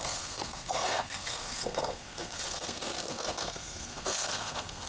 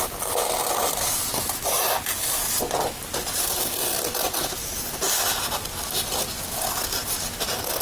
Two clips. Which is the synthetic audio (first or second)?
first